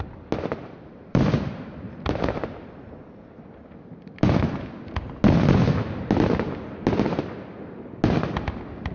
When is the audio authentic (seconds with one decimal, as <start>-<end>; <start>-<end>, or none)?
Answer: 0.0-0.6; 1.5-8.9